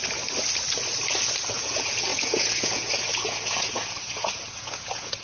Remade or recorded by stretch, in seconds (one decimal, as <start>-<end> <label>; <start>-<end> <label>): 0.0-1.6 recorded; 1.6-5.2 remade

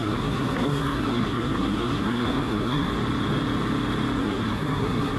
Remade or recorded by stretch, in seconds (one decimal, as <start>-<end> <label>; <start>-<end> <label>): 0.0-2.9 remade; 2.9-4.2 recorded; 4.2-5.2 remade

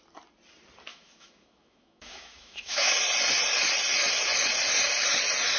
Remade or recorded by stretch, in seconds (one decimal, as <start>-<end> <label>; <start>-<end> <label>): 0.0-0.9 recorded; 0.9-2.9 remade; 2.9-5.6 recorded

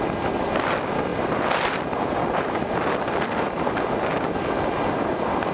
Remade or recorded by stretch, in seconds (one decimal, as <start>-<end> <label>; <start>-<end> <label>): 0.0-1.1 recorded; 1.1-3.8 remade; 3.8-5.5 recorded

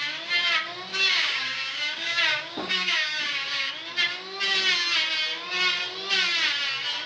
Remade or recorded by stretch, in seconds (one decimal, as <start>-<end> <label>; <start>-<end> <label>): 0.0-0.9 recorded; 0.9-3.7 remade; 3.7-7.1 recorded

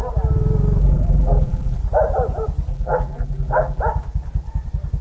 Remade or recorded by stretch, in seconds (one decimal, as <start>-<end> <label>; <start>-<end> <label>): 0.0-0.8 recorded; 0.8-1.8 remade; 1.8-2.7 recorded; 2.7-3.8 remade; 3.8-5.0 recorded

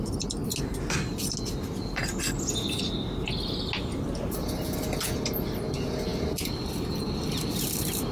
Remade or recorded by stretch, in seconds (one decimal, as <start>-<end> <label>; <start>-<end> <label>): 0.0-8.1 recorded

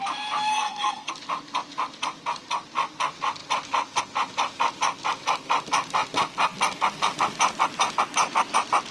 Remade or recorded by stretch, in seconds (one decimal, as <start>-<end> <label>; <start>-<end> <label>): 0.0-0.5 recorded; 0.5-1.1 remade; 1.1-8.9 recorded